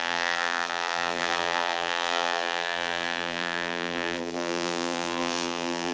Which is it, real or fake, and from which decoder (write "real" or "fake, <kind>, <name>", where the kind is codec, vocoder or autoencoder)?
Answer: fake, vocoder, BigVGAN v2